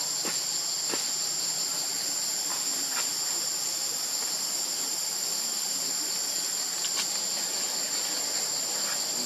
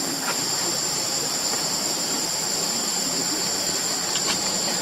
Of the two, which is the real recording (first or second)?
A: first